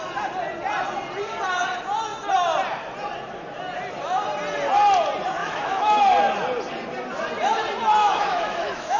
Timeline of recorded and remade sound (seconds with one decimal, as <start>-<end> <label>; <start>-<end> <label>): 0.0-5.4 recorded; 5.4-6.0 remade; 6.0-8.0 recorded; 8.0-9.0 remade